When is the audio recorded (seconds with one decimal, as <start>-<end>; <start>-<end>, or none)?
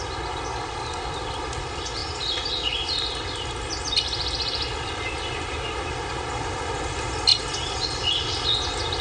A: 0.0-0.5; 1.0-9.0